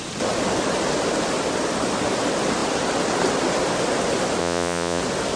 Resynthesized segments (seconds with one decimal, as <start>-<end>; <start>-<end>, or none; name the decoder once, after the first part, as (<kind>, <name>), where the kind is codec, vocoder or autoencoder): 4.4-5.0 (vocoder, Vocos)